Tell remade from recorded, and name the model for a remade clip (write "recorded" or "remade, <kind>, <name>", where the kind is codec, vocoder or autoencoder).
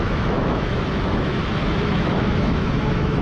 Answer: remade, autoencoder, DAC-VAE